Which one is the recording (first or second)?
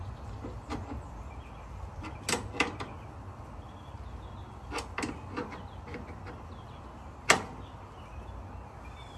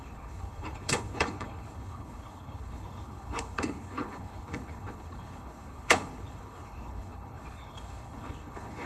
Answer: first